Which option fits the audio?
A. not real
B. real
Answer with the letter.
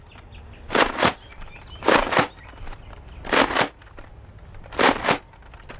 B